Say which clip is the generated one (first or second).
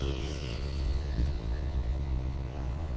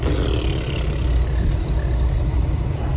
first